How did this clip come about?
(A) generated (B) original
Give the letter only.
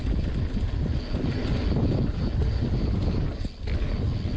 B